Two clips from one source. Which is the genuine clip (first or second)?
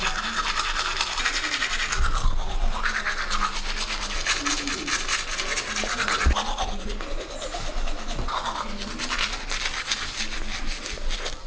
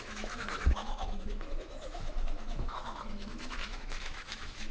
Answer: first